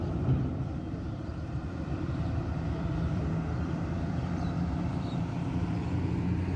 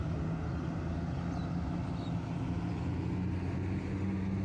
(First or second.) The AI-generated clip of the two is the first